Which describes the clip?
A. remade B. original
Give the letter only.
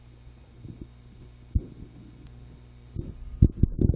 B